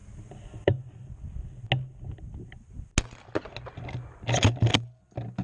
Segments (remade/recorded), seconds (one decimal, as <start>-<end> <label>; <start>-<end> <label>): 0.0-5.4 recorded

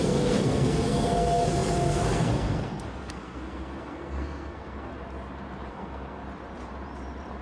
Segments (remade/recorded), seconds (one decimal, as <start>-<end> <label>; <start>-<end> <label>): 0.0-4.9 remade; 4.9-5.7 recorded; 5.7-6.2 remade; 6.2-7.4 recorded

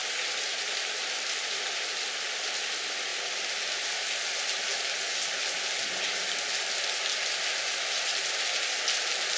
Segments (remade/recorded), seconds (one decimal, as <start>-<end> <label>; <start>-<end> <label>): 0.0-1.6 remade; 1.6-3.1 recorded; 3.1-3.7 remade; 3.7-9.4 recorded

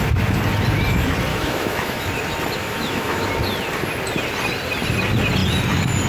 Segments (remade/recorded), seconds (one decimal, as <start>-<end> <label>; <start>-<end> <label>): 0.0-1.3 recorded; 1.3-2.1 remade; 2.1-2.6 recorded; 2.6-3.3 remade; 3.3-6.1 recorded

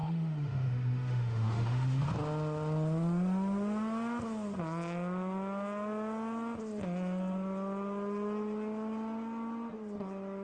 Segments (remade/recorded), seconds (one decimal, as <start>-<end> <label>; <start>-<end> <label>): 0.0-2.0 remade; 2.0-10.4 recorded